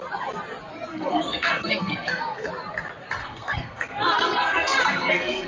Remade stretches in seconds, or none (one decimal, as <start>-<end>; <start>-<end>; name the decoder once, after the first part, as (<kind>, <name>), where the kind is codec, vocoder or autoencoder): 0.9-2.5 (codec, SNAC); 3.2-5.5